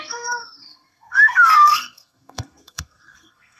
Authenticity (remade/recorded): remade